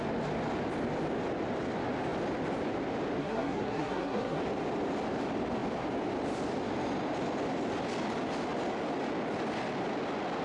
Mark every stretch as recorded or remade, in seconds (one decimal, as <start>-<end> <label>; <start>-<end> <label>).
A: 0.0-3.2 recorded; 3.2-4.4 remade; 4.4-10.4 recorded